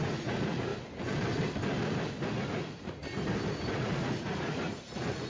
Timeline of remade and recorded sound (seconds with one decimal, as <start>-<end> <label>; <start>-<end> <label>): 0.0-0.7 remade; 0.7-2.4 recorded; 2.4-3.0 remade; 3.0-3.7 recorded; 3.7-5.3 remade